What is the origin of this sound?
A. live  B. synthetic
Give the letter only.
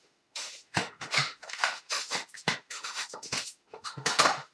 B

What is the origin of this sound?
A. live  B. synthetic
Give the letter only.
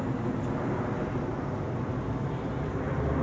A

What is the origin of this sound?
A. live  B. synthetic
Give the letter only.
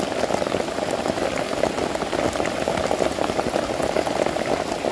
A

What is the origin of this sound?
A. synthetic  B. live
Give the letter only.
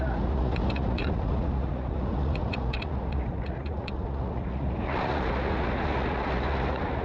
A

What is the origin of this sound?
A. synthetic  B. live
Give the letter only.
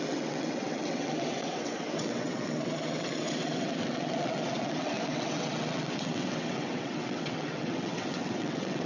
A